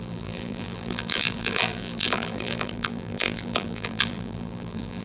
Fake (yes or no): yes